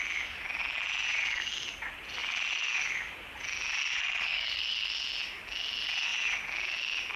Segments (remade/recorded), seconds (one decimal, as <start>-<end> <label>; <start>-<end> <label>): 0.0-4.3 recorded; 4.3-4.9 remade; 4.9-7.2 recorded